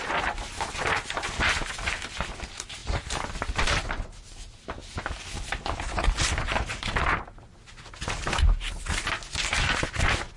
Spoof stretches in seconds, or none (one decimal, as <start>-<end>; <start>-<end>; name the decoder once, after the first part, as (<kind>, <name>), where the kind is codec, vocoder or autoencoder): none